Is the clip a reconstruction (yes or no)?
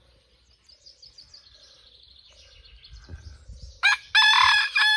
no